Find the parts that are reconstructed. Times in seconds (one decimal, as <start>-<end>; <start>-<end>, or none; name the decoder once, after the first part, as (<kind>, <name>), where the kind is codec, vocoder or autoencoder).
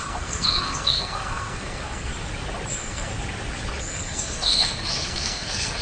0.0-2.1 (codec, SNAC); 2.7-3.1; 3.8-5.8